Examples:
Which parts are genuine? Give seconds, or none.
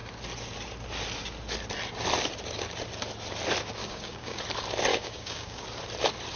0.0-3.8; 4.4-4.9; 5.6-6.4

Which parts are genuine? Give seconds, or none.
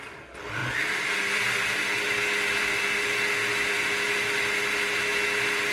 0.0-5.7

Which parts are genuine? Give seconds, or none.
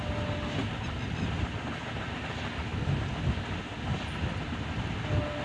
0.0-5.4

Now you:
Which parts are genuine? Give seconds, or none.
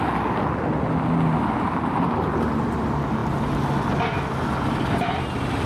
0.0-5.7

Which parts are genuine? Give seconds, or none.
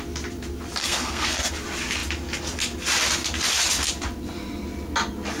0.0-0.8; 1.5-5.4